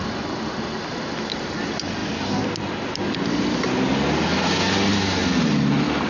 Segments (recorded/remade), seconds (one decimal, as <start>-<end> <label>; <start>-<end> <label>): 0.0-6.1 recorded